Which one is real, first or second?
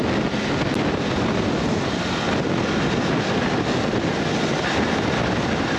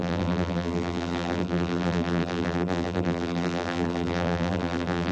first